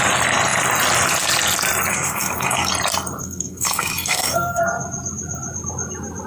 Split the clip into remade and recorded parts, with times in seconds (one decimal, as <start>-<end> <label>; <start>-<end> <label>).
0.0-1.9 recorded; 1.9-2.7 remade; 2.7-3.2 recorded; 3.2-4.6 remade; 4.6-6.3 recorded